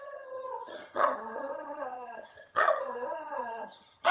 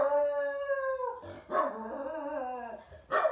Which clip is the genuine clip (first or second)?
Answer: second